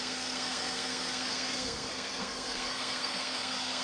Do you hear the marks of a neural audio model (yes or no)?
yes